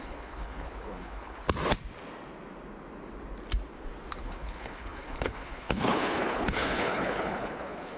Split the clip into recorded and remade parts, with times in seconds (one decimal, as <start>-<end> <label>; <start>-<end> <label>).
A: 0.0-1.4 remade; 1.4-4.2 recorded; 4.2-8.0 remade